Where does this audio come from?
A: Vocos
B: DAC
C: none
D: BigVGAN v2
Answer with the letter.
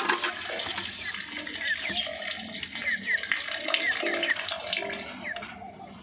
C